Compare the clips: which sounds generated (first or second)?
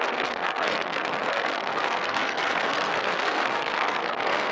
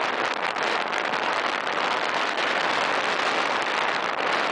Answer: first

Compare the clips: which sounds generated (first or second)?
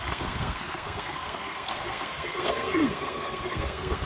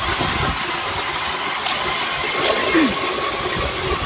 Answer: first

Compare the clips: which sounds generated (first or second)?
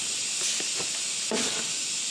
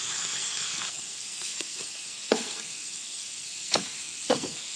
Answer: second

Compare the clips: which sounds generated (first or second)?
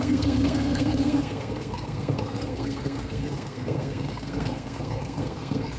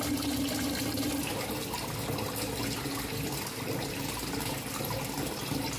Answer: first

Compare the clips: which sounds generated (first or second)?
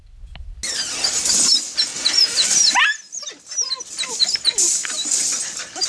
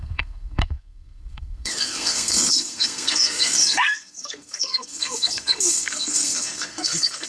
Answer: second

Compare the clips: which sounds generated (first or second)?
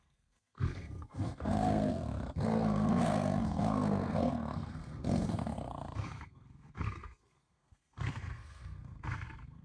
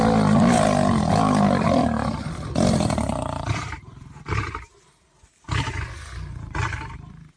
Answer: first